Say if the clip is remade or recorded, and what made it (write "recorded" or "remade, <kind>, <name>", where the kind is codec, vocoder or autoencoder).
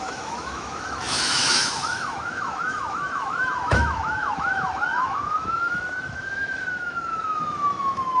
remade, autoencoder, DAC-VAE